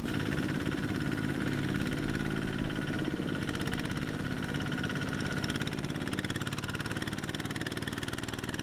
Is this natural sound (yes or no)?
yes